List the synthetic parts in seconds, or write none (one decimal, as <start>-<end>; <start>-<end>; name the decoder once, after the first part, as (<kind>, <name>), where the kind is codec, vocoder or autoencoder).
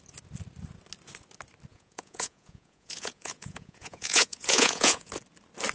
1.7-5.1 (vocoder, Vocos)